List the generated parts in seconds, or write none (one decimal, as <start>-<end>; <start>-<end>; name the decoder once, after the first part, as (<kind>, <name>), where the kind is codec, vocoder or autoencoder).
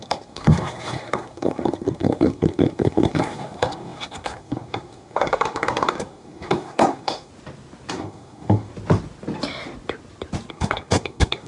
0.0-7.3 (codec, SNAC); 7.9-8.7; 10.5-11.5